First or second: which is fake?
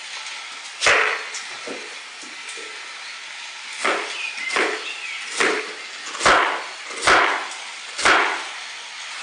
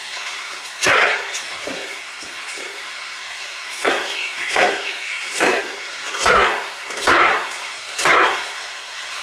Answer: second